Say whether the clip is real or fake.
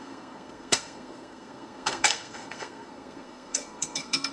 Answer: fake